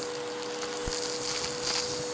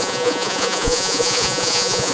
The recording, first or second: first